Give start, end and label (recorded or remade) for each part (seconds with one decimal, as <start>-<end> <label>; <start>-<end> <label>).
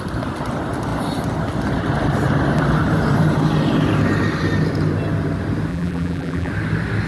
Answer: 0.0-5.7 recorded; 5.7-6.5 remade; 6.5-7.1 recorded